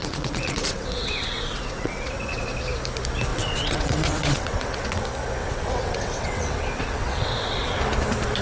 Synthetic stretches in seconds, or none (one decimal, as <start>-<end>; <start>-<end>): 0.0-2.5; 3.3-5.0; 5.4-7.8